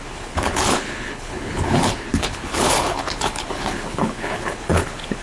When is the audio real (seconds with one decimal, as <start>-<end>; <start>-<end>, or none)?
none